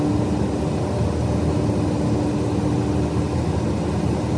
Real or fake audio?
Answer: real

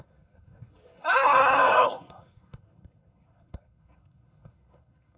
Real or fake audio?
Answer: fake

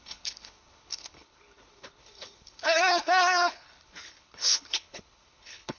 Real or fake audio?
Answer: fake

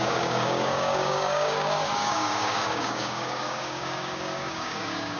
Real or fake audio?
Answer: fake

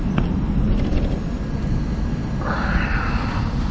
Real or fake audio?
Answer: real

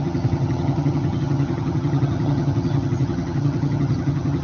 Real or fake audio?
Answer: fake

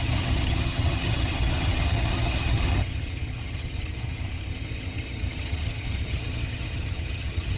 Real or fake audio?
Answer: fake